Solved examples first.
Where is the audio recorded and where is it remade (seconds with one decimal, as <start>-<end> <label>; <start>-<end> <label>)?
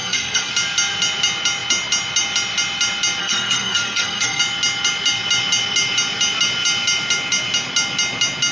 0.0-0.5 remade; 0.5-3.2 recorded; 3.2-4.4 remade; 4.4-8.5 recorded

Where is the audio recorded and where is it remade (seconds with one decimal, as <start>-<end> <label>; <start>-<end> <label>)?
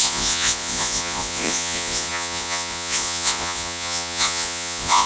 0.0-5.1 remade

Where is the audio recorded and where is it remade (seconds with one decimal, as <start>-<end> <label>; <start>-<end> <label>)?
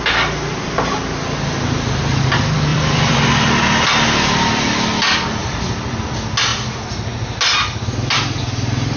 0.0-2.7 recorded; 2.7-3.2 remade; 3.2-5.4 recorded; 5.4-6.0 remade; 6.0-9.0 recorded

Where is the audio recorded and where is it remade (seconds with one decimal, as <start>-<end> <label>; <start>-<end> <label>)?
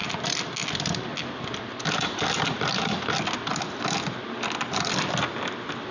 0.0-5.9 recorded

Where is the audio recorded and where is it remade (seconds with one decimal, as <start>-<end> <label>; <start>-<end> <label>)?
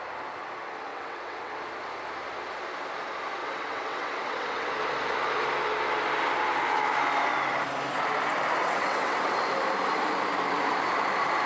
0.0-0.9 recorded; 0.9-1.5 remade; 1.5-3.4 recorded; 3.4-4.7 remade; 4.7-8.6 recorded; 8.6-9.2 remade; 9.2-11.5 recorded